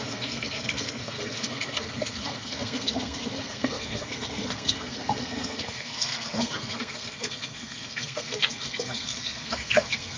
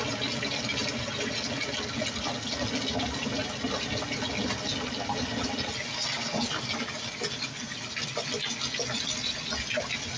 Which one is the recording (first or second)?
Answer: second